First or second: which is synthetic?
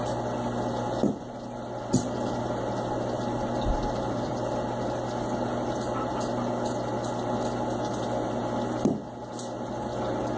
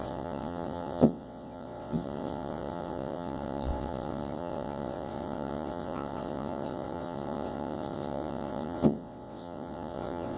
second